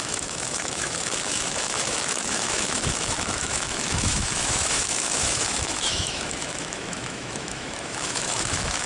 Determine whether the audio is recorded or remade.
remade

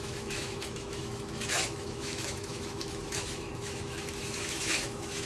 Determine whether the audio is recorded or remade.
remade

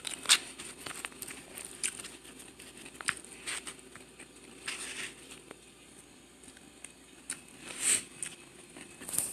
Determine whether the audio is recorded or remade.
recorded